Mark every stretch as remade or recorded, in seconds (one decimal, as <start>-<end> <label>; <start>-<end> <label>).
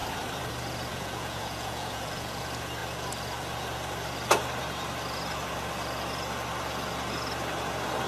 0.0-0.9 recorded; 0.9-2.4 remade; 2.4-8.1 recorded